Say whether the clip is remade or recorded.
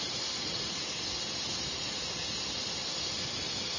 recorded